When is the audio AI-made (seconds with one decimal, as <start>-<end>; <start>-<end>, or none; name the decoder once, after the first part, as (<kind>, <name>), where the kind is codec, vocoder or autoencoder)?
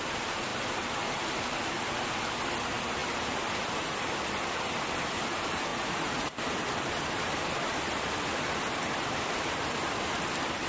5.7-6.4 (vocoder, Vocos)